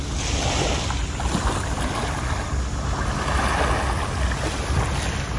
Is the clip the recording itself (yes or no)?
yes